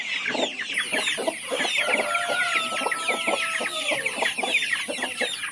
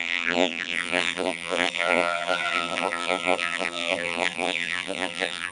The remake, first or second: second